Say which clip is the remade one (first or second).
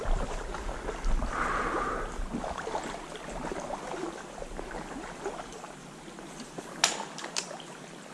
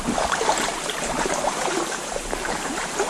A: second